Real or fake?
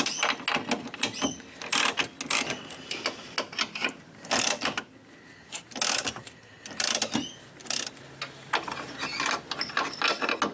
real